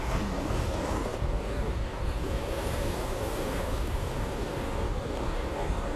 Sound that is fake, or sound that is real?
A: fake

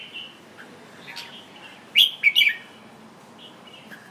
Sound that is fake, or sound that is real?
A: real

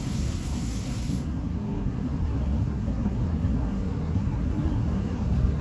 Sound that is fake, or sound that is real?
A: fake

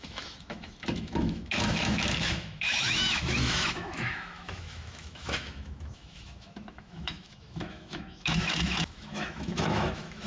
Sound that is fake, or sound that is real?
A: fake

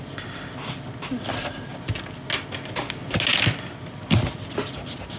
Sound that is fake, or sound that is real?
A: real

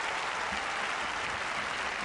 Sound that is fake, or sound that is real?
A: real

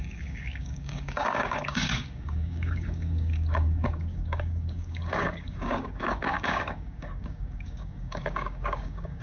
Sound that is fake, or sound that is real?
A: fake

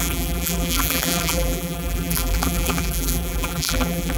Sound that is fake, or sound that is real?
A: fake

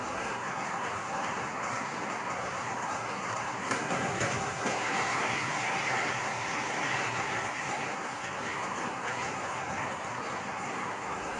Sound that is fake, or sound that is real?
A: fake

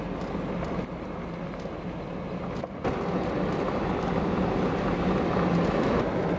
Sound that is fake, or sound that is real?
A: real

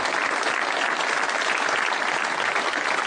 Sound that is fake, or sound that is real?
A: real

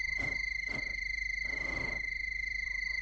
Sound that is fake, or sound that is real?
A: fake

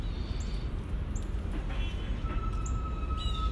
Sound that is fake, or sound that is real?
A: real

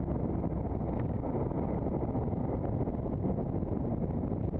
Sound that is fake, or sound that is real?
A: real